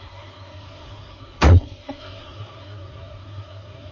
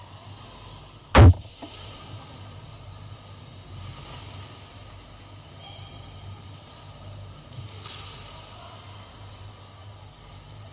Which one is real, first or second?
second